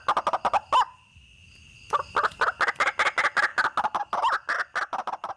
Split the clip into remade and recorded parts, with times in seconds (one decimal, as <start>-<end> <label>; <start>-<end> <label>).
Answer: 0.0-5.4 recorded